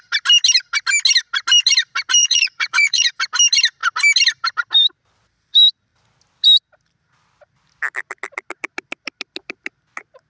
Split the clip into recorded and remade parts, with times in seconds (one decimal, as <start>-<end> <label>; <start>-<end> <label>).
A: 0.0-2.2 recorded; 2.2-3.1 remade; 3.1-10.3 recorded